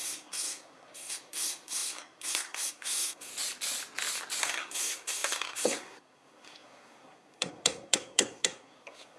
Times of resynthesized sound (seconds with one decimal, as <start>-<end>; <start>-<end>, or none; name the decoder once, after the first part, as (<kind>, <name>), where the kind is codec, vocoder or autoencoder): 0.0-3.3 (codec, SNAC); 4.4-9.2